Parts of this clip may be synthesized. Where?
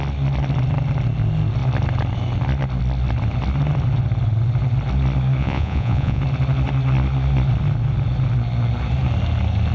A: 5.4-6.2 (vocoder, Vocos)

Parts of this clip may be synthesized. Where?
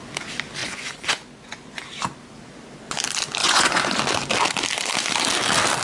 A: 0.6-1.8 (vocoder, Vocos); 3.4-4.0